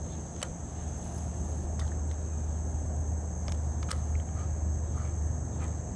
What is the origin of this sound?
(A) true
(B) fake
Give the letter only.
A